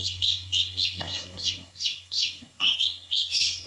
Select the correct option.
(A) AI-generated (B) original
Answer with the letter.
A